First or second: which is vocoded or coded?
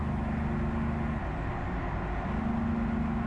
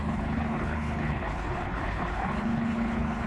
second